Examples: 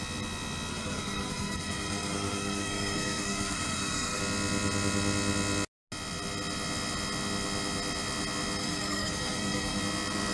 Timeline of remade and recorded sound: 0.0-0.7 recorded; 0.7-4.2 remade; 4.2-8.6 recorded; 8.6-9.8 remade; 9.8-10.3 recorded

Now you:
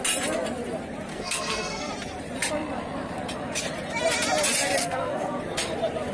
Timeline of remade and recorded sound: 0.0-1.1 recorded; 1.1-1.9 remade; 1.9-4.8 recorded; 4.8-5.4 remade; 5.4-6.1 recorded

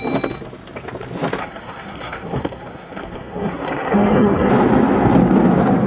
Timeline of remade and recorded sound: 0.0-1.4 recorded; 1.4-4.5 remade; 4.5-5.9 recorded

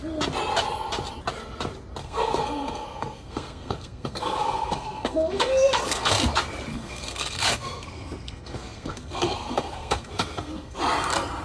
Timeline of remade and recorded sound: 0.0-2.0 recorded; 2.0-6.1 remade; 6.1-6.7 recorded; 6.7-10.8 remade; 10.8-11.4 recorded